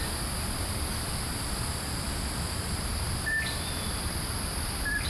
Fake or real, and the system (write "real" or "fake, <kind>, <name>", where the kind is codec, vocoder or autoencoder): real